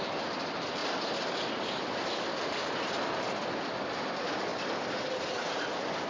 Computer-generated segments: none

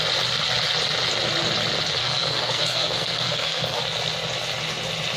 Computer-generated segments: 2.0-3.8 (codec, SNAC)